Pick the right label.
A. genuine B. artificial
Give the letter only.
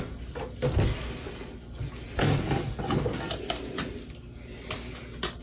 A